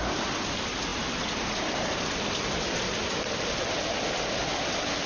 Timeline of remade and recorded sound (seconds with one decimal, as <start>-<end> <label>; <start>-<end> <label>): 0.0-5.1 recorded